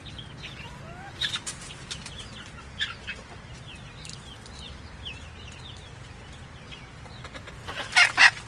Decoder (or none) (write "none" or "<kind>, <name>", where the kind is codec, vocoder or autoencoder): none